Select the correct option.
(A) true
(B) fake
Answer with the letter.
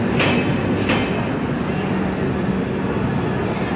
A